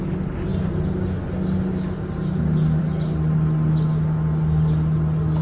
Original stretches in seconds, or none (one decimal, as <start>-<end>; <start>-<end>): 0.0-5.4